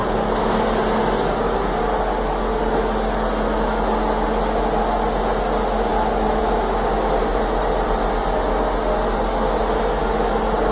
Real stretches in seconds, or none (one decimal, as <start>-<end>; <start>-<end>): 0.0-10.7